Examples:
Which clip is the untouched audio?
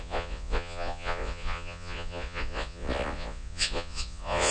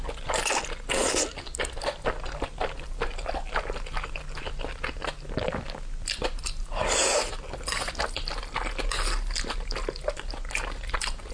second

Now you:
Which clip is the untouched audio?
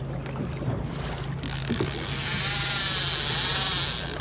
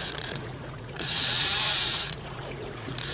first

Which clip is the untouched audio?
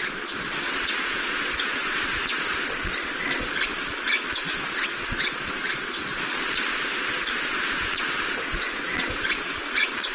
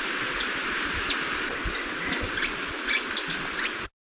second